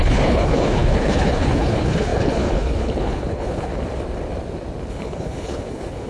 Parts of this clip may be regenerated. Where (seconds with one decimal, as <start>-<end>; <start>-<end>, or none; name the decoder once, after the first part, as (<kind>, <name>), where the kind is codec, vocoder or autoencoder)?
0.0-3.7 (codec, HILCodec); 4.9-6.1